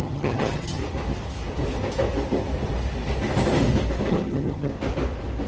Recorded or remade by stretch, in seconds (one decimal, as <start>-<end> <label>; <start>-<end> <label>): 0.0-0.8 remade; 0.8-4.1 recorded; 4.1-4.7 remade; 4.7-5.5 recorded